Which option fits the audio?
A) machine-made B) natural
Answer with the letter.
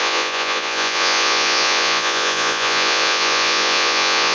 A